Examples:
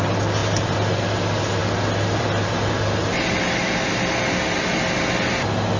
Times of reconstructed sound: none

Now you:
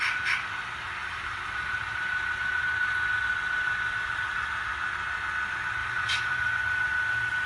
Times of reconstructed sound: 1.0-3.1; 5.8-6.6

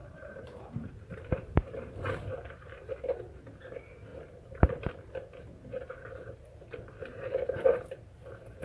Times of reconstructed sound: 0.0-2.9; 4.1-5.1; 7.0-7.7

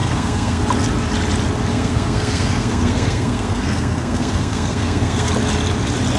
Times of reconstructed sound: 0.0-0.6; 1.7-5.3

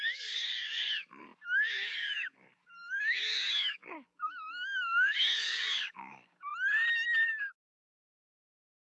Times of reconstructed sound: 0.0-6.5; 7.3-8.9

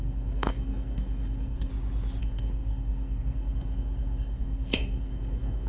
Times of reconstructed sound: 0.0-1.7; 2.2-5.7